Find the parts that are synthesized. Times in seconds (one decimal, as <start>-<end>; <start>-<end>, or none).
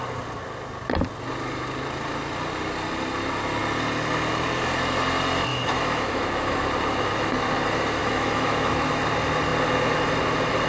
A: 5.5-6.6; 8.0-8.7